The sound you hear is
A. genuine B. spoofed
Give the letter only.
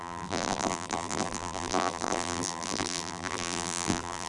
B